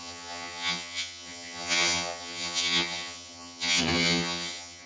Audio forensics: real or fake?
fake